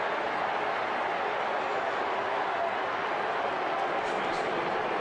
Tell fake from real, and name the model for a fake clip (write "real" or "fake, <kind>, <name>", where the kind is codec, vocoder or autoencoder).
real